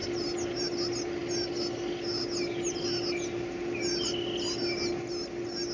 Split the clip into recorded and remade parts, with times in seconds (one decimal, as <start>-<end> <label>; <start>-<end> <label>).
0.0-5.7 recorded